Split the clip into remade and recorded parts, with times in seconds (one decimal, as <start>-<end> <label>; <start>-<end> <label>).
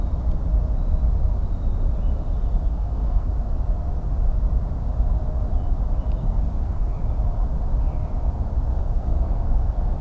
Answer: 0.0-2.7 recorded; 2.7-3.3 remade; 3.3-6.2 recorded; 6.2-7.0 remade; 7.0-8.7 recorded; 8.7-10.0 remade